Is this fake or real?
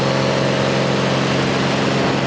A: real